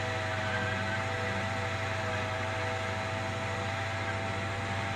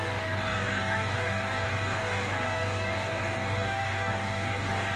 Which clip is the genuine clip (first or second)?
first